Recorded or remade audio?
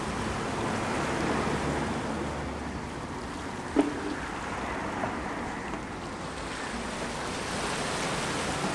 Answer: recorded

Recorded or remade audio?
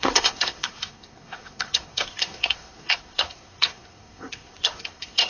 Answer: remade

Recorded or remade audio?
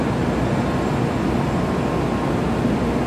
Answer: recorded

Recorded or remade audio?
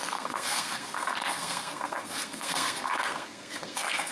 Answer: remade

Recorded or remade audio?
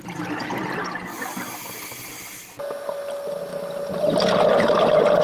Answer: recorded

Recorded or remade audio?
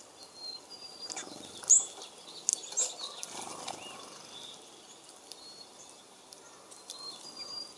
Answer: recorded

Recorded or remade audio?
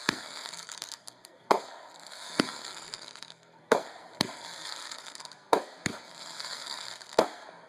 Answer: remade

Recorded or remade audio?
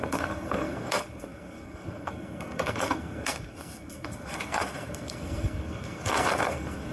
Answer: remade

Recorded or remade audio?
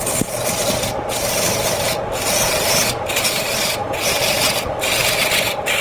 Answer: recorded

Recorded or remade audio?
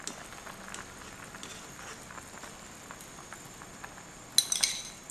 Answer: recorded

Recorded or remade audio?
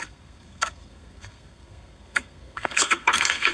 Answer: remade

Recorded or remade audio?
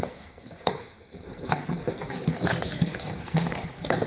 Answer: remade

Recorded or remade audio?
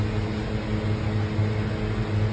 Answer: recorded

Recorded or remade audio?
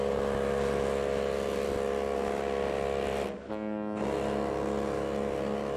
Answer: recorded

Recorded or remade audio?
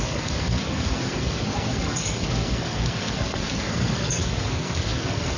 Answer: remade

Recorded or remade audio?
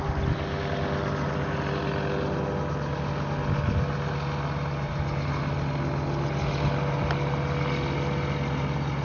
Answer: recorded